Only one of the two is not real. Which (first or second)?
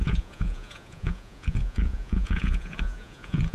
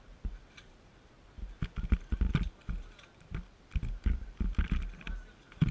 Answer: first